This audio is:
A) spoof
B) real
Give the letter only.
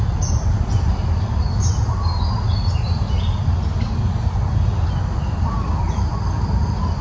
B